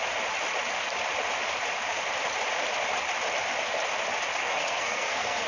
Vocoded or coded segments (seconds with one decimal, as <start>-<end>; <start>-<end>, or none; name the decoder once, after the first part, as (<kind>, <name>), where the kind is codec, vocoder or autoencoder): 4.4-5.5 (codec, SNAC)